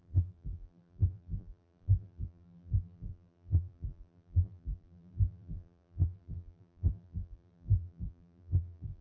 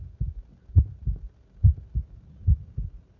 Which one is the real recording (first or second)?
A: second